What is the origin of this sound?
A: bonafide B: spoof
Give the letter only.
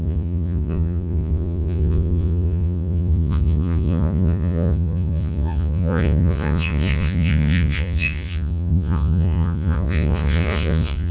B